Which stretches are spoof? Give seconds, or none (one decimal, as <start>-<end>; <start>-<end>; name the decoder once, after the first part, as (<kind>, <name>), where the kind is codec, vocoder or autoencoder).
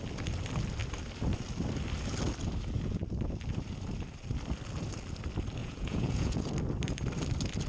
5.6-6.5 (vocoder, Vocos)